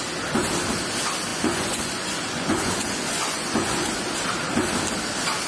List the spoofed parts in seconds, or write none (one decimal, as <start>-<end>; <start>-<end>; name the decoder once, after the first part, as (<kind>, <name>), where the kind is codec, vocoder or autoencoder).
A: 1.3-3.9 (vocoder, Vocos)